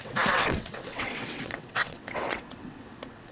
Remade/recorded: remade